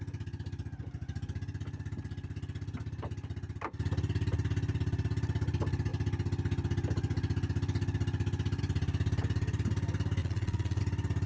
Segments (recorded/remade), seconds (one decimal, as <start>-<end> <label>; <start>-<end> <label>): 0.0-10.2 recorded; 10.2-10.8 remade; 10.8-11.3 recorded